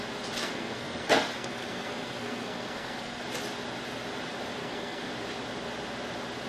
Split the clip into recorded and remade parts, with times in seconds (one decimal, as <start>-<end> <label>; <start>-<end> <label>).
0.0-0.4 recorded; 0.4-3.2 remade; 3.2-4.6 recorded; 4.6-5.1 remade; 5.1-6.5 recorded